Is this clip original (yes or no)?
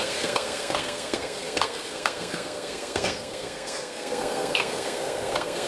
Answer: no